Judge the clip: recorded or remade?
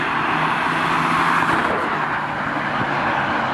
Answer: recorded